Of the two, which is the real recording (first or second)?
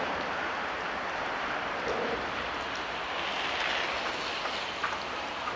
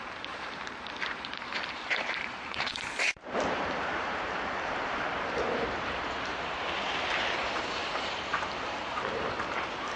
first